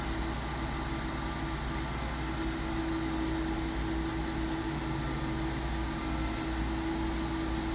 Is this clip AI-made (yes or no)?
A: no